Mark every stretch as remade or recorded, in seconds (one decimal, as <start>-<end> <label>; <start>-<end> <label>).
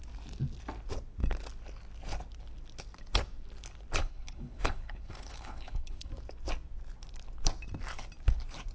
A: 0.0-4.0 recorded; 4.0-6.1 remade; 6.1-8.7 recorded